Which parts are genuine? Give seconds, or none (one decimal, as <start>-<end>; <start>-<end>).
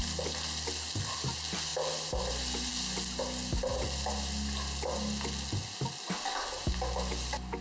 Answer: 0.0-7.6